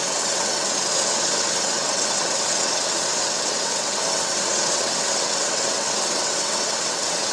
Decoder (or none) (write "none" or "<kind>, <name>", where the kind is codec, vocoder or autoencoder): vocoder, WaveNeXt